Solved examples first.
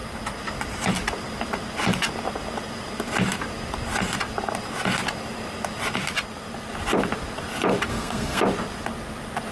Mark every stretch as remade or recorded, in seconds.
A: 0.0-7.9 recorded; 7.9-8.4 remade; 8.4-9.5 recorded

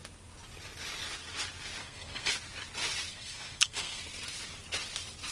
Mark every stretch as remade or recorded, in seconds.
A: 0.0-1.8 recorded; 1.8-2.3 remade; 2.3-3.1 recorded; 3.1-4.0 remade; 4.0-5.3 recorded

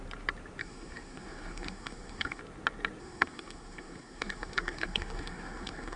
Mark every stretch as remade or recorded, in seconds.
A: 0.0-0.6 recorded; 0.6-2.4 remade; 2.4-3.0 recorded; 3.0-6.0 remade